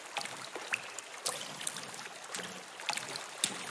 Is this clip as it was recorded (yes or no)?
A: yes